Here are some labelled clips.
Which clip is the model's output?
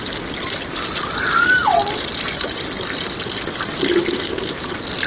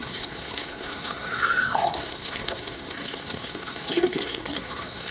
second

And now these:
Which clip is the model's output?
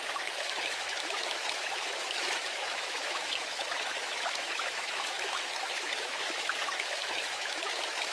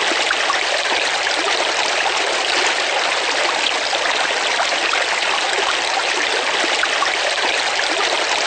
first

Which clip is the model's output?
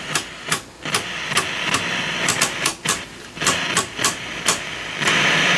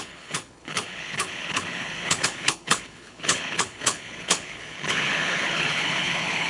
second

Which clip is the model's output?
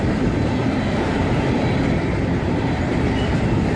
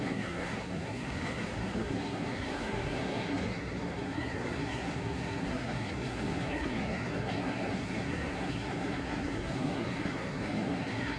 second